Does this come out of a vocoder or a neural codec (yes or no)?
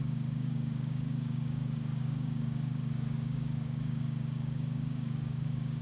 yes